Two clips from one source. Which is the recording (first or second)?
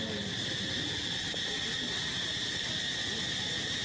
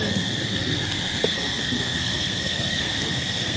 first